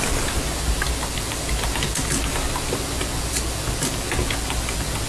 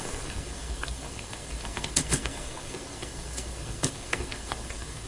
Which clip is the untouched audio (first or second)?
first